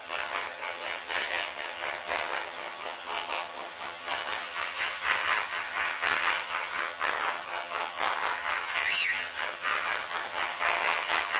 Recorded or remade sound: remade